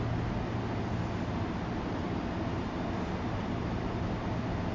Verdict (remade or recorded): recorded